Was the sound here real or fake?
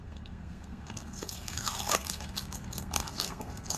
fake